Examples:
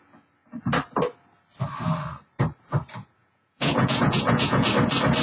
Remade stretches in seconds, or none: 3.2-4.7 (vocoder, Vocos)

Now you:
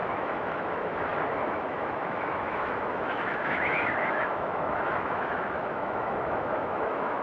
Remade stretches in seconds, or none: 0.0-7.2 (autoencoder, DAC-VAE)

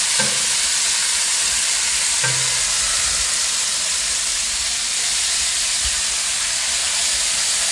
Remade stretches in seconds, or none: 5.1-6.1 (vocoder, BigVGAN v2); 6.8-7.7

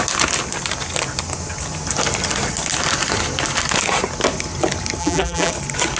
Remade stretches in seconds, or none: 5.0-5.5 (vocoder, BigVGAN v2)